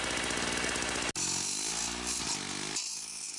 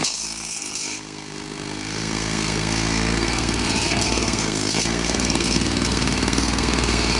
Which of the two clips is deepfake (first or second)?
second